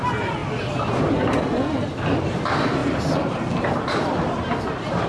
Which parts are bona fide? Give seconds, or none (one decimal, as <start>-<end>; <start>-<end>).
0.4-2.2; 2.8-5.1